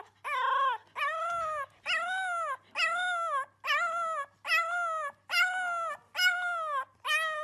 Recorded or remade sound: recorded